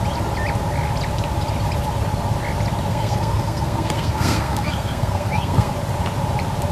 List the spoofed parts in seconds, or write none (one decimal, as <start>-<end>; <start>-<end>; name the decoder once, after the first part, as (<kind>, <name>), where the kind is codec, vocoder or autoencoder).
2.9-5.7 (codec, SNAC)